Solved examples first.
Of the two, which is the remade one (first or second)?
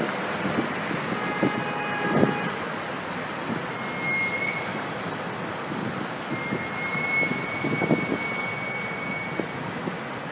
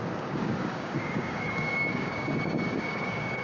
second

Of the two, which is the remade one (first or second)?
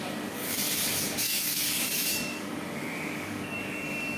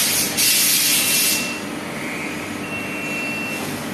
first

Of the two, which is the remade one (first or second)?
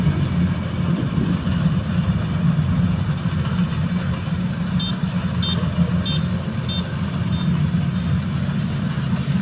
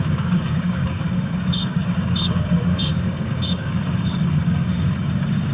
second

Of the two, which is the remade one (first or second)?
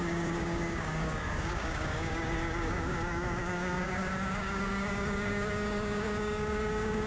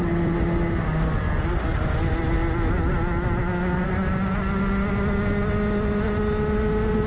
first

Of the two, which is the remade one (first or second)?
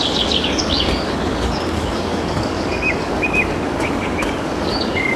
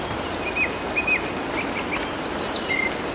first